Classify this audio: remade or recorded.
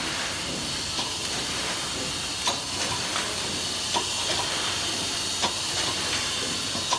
recorded